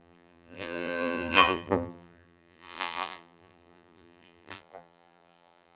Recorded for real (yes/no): no